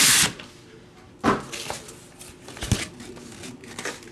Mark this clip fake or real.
real